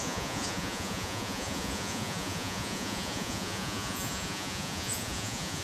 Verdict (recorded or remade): remade